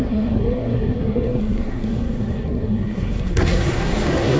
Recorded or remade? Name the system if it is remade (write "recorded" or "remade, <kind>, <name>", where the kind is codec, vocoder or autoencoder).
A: remade, codec, SNAC